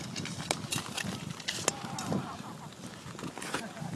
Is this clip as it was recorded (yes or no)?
yes